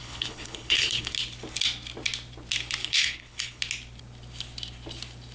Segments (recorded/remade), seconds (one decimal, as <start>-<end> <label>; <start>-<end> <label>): 0.0-1.1 remade; 1.1-2.8 recorded; 2.8-3.6 remade; 3.6-5.3 recorded

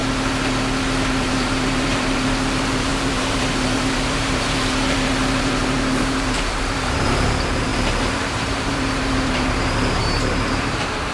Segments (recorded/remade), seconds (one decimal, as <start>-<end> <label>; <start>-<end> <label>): 0.0-1.1 recorded; 1.1-11.1 remade

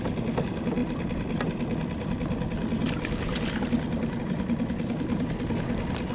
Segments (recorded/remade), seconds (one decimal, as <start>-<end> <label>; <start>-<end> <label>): 0.0-6.1 recorded

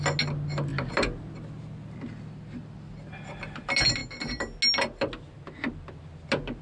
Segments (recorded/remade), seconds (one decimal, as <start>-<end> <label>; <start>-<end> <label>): 0.0-6.6 recorded

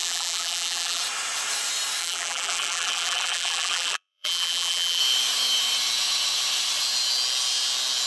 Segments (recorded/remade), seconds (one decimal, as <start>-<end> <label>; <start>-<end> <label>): 0.0-1.0 remade; 1.0-2.0 recorded; 2.0-5.0 remade; 5.0-8.1 recorded

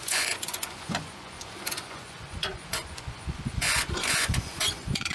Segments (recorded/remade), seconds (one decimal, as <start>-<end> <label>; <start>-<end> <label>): 0.0-5.1 remade